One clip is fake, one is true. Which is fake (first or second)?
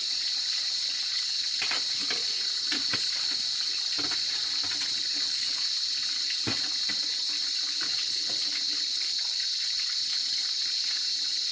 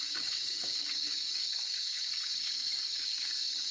second